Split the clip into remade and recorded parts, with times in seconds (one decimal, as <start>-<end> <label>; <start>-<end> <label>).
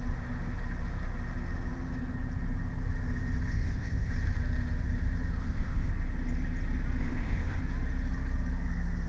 0.0-3.5 recorded; 3.5-4.1 remade; 4.1-5.4 recorded; 5.4-5.9 remade; 5.9-7.0 recorded; 7.0-7.6 remade; 7.6-9.1 recorded